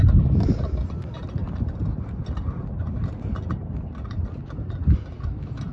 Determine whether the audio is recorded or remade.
remade